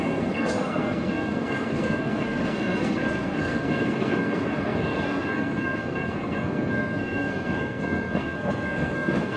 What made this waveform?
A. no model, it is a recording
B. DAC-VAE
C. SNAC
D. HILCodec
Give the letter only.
C